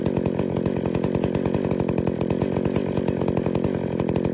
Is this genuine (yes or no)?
yes